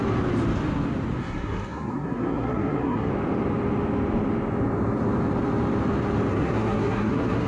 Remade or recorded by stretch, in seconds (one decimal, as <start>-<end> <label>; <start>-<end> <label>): 0.0-1.2 recorded; 1.2-3.1 remade; 3.1-6.3 recorded; 6.3-7.5 remade